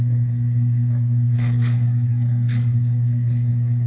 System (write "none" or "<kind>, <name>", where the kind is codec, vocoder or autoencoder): codec, SNAC